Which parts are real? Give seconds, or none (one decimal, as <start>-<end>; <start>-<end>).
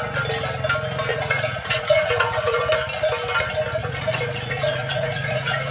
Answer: 0.0-1.1; 2.6-3.8